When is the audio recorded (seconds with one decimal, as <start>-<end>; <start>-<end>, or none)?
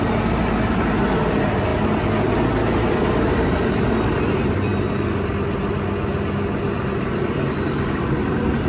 0.0-8.7